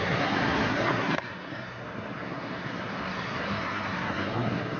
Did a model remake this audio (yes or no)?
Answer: yes